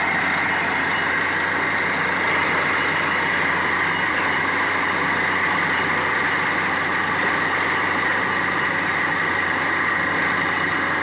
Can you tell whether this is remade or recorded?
remade